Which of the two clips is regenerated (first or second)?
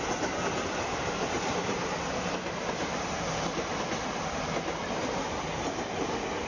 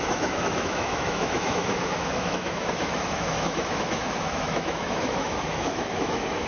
second